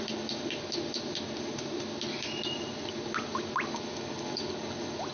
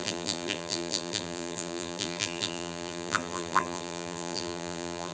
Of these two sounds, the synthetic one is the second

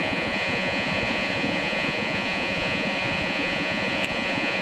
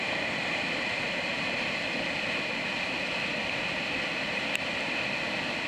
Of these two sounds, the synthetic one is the first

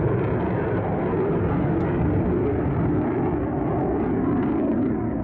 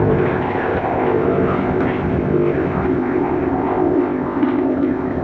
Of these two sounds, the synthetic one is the second